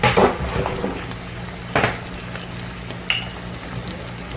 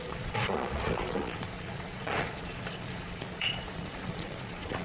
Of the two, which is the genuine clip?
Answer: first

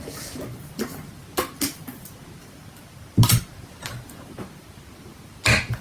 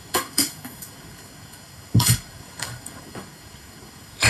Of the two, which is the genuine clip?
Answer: first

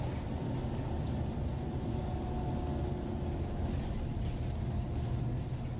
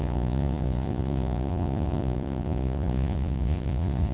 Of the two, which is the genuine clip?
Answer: first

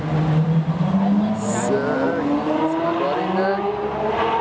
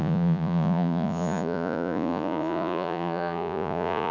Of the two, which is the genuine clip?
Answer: first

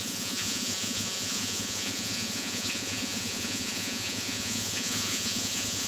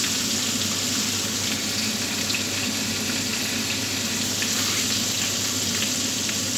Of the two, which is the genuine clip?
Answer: second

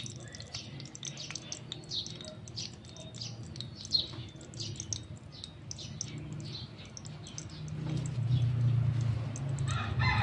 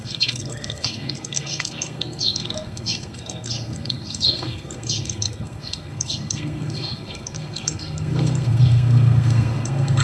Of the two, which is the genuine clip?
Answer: first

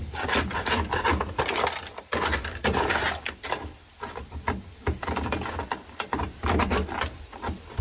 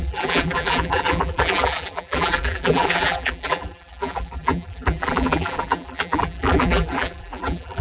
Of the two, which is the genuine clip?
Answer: first